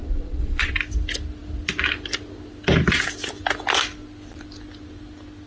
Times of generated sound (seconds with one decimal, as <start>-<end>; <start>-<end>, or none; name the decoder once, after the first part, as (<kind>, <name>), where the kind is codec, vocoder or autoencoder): 0.0-0.7 (vocoder, WaveNeXt)